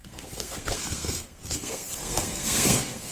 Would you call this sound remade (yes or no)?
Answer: yes